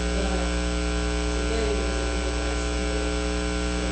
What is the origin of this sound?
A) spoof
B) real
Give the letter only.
B